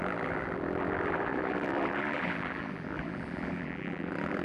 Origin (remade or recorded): remade